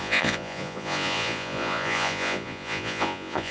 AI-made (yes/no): yes